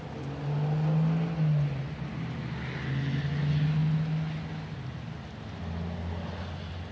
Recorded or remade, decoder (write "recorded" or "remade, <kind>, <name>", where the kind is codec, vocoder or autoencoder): recorded